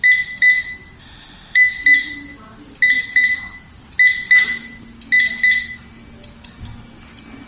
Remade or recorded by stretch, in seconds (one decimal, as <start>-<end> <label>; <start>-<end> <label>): 0.0-1.0 recorded; 1.0-1.7 remade; 1.7-7.5 recorded